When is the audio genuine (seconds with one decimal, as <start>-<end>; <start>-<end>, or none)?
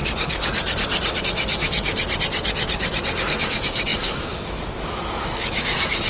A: 0.0-1.2; 1.9-3.4